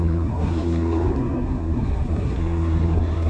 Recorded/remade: remade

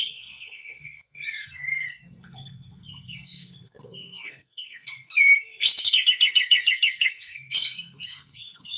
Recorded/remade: remade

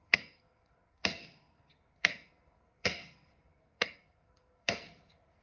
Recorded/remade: remade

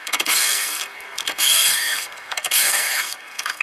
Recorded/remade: remade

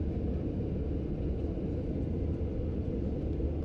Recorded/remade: recorded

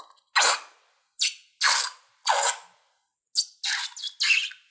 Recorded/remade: recorded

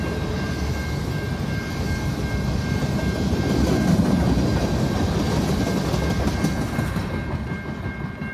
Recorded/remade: recorded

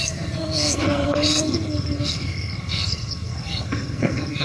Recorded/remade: remade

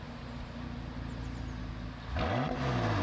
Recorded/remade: recorded